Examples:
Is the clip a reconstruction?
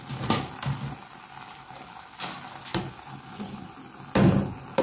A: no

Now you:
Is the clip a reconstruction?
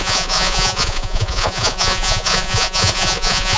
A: yes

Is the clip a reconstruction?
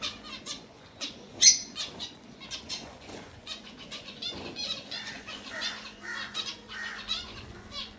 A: yes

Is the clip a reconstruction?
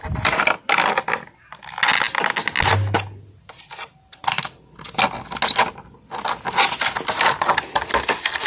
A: no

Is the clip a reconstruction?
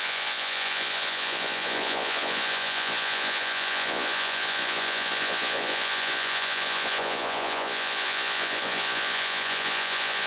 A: yes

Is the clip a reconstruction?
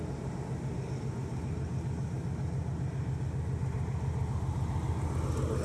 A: no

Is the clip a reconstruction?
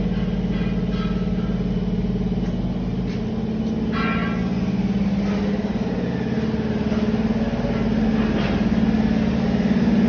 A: no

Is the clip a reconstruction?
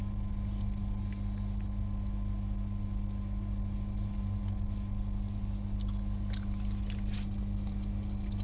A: no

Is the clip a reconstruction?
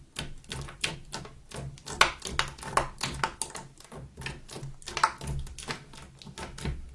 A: no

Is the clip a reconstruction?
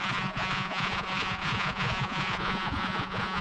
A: yes